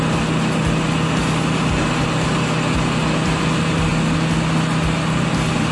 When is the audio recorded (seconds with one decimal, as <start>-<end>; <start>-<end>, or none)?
0.0-5.7